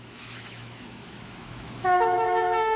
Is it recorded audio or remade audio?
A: remade